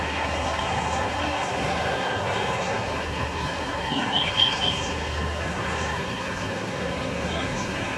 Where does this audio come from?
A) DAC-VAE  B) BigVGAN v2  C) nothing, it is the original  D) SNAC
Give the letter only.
D